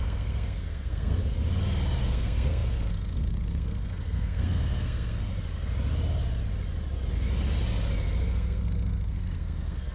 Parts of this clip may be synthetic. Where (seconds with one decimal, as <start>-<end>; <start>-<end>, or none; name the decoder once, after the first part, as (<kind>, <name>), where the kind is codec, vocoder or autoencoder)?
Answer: 0.0-1.2 (codec, SNAC); 2.0-5.3; 8.2-9.9